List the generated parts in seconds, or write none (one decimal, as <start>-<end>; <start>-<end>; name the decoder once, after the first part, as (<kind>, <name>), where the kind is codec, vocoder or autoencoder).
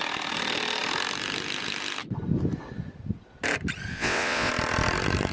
3.9-4.5 (vocoder, WaveNeXt)